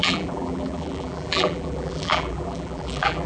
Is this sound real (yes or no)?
no